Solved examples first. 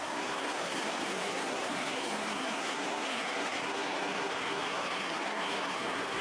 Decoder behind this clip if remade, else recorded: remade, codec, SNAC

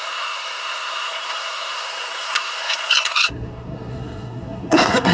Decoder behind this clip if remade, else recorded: remade, codec, SNAC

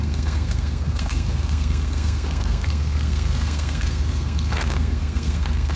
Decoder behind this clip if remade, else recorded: remade, codec, SNAC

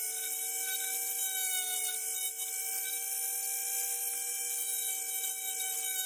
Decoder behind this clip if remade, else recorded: recorded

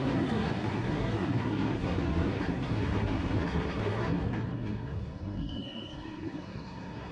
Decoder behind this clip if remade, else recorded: remade, codec, SNAC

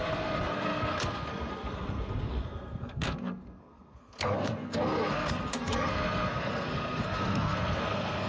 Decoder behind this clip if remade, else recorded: remade, codec, SNAC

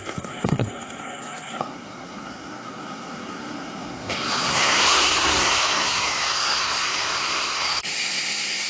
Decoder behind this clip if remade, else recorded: remade, codec, SNAC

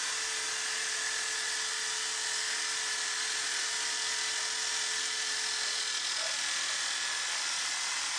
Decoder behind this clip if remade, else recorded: recorded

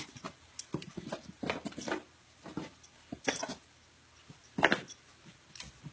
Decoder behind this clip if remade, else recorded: recorded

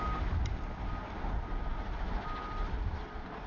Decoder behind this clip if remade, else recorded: recorded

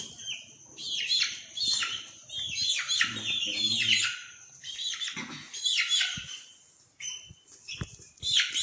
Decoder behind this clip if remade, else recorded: recorded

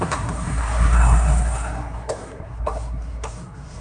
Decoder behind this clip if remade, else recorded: remade, codec, SNAC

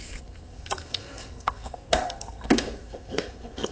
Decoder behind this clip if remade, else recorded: remade, codec, SNAC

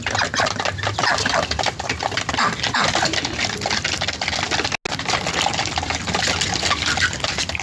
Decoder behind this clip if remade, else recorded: recorded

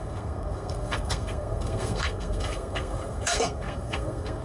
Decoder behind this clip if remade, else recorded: remade, codec, SNAC